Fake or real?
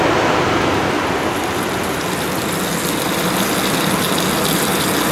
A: real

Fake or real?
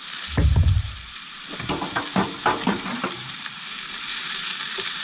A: fake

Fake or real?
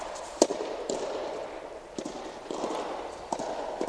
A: fake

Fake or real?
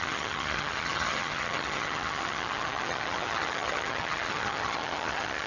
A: fake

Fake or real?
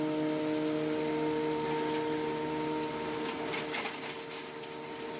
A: real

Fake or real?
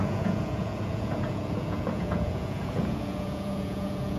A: fake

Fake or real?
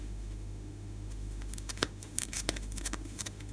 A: fake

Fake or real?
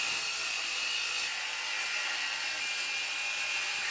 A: real